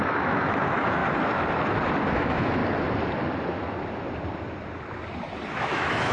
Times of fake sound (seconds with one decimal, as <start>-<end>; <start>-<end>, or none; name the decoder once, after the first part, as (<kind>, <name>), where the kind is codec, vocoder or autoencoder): 0.0-1.0 (autoencoder, DAC-VAE); 2.1-2.6; 5.6-6.1